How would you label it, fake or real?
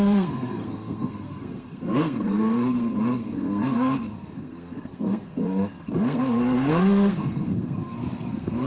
fake